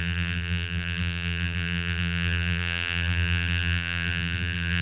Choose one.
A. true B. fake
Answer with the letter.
B